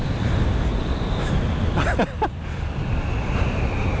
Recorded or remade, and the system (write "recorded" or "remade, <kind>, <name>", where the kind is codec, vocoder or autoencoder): recorded